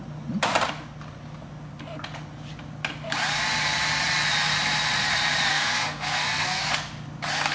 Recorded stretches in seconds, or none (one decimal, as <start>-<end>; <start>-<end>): 0.0-5.5; 6.6-7.5